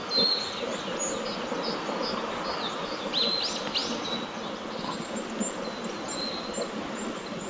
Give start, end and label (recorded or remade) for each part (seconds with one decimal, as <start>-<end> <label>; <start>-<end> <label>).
0.0-7.5 recorded